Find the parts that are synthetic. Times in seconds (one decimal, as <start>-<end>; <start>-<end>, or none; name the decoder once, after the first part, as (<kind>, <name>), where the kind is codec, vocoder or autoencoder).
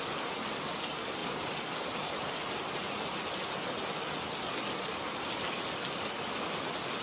1.2-2.7 (vocoder, BigVGAN v2)